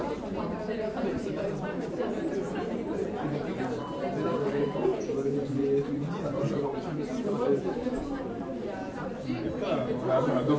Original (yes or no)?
no